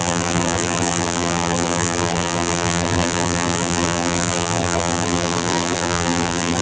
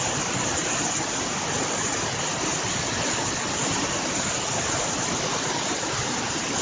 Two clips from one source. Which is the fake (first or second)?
first